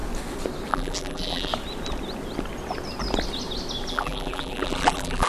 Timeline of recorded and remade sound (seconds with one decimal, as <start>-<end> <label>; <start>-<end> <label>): 0.0-0.7 recorded; 0.7-1.5 remade; 1.5-3.9 recorded; 3.9-5.3 remade